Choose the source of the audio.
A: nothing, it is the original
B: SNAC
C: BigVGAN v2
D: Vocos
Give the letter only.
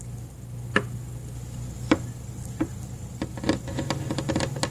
A